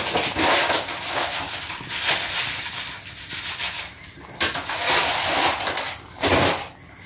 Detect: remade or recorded recorded